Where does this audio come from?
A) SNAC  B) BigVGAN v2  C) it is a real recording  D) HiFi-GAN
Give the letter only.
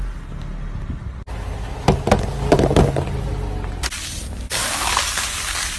C